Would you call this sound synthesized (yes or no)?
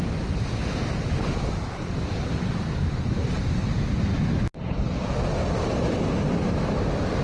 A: no